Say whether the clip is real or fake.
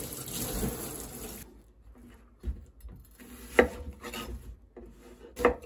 real